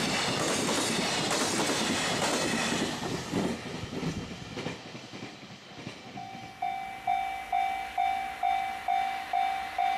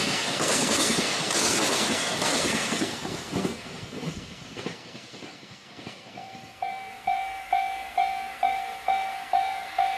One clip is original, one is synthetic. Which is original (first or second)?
first